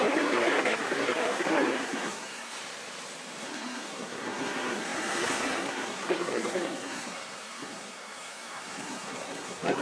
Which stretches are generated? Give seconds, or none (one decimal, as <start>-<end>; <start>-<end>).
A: 0.0-2.6; 3.4-9.8